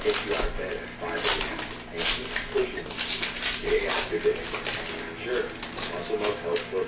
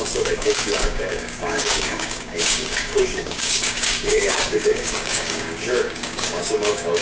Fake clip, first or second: second